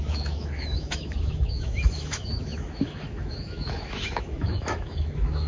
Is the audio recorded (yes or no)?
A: no